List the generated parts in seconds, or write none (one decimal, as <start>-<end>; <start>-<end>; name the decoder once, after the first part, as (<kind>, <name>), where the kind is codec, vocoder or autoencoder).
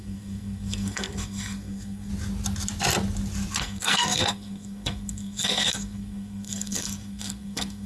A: 0.0-2.1 (codec, SNAC); 3.6-7.9